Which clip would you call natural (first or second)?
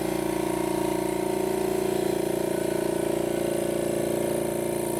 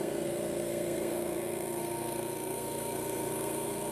first